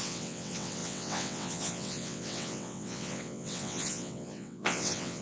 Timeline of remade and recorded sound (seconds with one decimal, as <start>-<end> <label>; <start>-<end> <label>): 0.0-5.2 remade